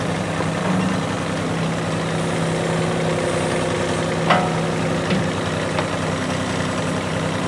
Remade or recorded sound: recorded